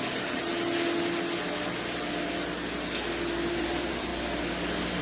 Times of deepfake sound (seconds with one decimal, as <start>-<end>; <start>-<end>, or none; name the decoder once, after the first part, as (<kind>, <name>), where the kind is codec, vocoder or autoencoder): 0.0-0.5 (vocoder, BigVGAN v2); 3.5-4.1